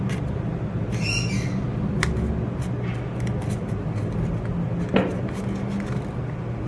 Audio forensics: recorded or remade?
recorded